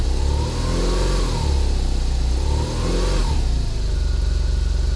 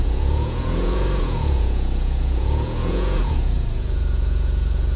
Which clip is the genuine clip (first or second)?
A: first